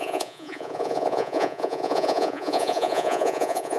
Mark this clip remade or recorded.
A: remade